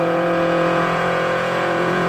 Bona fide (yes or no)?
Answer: no